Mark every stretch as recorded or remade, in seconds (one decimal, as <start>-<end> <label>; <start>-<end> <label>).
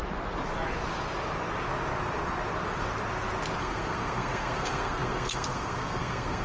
0.0-3.6 recorded; 3.6-6.4 remade